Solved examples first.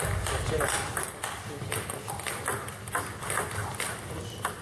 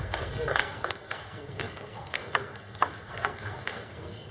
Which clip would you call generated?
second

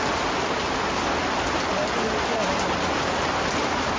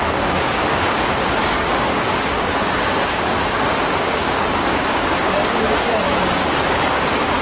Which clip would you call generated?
second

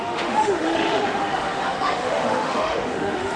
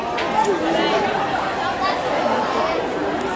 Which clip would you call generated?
first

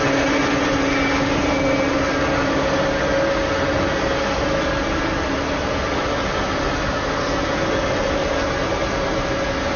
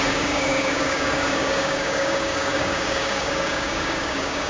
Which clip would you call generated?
second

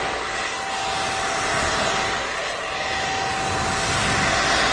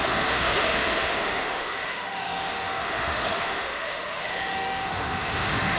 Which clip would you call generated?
second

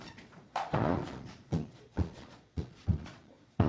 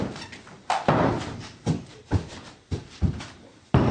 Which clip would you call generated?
first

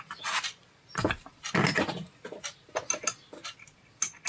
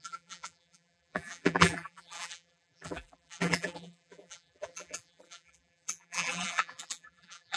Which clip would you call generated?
second